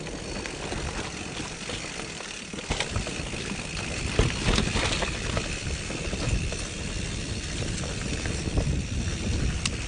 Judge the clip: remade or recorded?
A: recorded